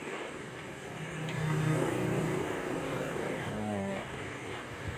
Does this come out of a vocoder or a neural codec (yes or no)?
yes